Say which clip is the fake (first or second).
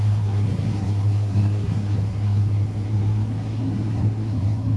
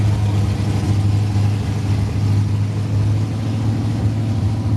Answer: first